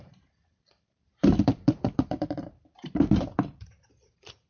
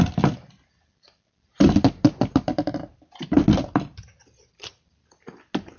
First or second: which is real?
second